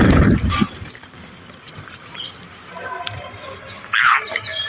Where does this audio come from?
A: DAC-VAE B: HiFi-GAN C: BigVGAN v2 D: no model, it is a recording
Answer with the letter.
C